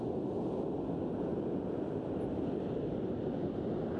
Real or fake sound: real